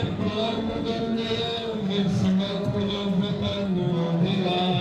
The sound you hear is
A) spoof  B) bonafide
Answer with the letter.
A